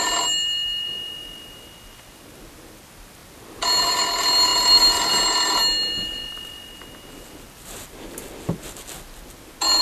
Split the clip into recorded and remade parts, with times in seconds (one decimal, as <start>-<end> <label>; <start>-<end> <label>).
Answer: 0.0-9.8 recorded